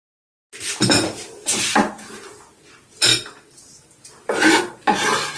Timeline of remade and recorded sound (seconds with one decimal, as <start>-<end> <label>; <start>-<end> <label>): 0.0-5.4 recorded